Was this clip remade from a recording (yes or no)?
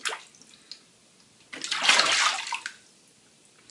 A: no